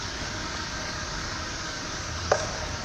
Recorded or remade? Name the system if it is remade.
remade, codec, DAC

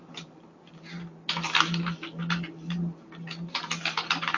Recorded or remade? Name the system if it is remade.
recorded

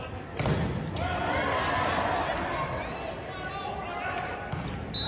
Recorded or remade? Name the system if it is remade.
recorded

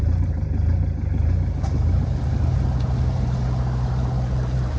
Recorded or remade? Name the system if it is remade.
recorded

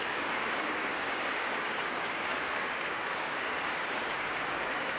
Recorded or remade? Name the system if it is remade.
remade, codec, DAC